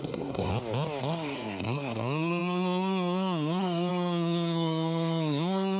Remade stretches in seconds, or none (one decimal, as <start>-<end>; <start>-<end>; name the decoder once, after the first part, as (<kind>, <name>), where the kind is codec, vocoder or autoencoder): 0.0-0.5 (codec, SNAC); 1.0-5.8